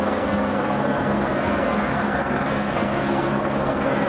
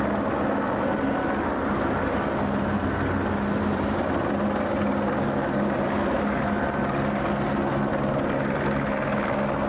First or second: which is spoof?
first